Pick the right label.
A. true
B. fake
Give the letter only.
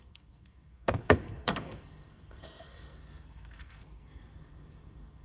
B